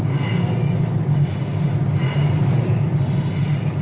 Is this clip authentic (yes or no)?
yes